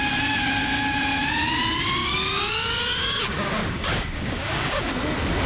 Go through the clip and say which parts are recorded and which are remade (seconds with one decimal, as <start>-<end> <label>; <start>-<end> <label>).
0.0-2.0 recorded; 2.0-4.9 remade; 4.9-5.5 recorded